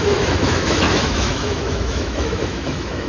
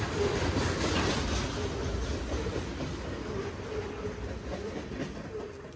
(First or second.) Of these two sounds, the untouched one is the second